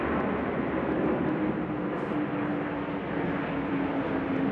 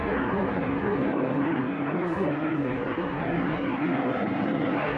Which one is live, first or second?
first